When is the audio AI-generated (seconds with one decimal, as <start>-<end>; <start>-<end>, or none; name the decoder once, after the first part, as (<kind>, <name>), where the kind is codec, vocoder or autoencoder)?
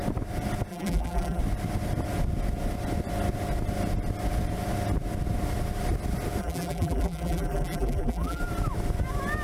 0.7-1.4 (vocoder, BigVGAN v2); 6.4-8.4